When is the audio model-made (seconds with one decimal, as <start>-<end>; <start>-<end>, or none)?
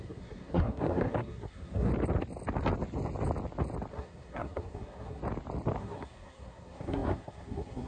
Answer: 0.0-1.9; 3.9-5.2; 5.8-7.9